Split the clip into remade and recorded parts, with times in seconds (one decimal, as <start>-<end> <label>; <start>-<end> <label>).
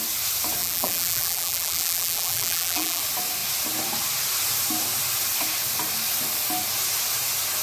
0.0-0.6 recorded; 0.6-3.0 remade; 3.0-7.6 recorded